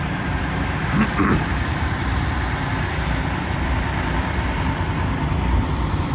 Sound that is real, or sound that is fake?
fake